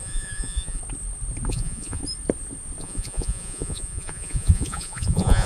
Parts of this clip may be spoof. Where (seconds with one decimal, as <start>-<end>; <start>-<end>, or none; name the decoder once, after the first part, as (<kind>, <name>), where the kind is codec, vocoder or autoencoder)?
0.0-0.8 (vocoder, Vocos); 1.5-2.0; 2.8-5.5